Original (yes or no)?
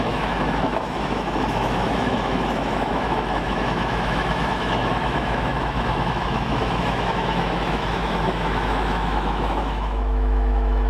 no